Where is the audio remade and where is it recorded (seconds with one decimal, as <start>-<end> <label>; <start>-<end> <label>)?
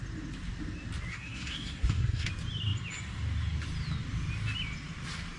0.0-1.1 recorded; 1.1-2.3 remade; 2.3-5.4 recorded